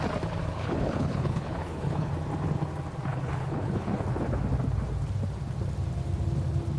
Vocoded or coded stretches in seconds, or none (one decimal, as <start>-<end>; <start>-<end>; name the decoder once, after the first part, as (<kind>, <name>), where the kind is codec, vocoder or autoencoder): 0.4-2.1 (codec, HILCodec); 3.1-4.0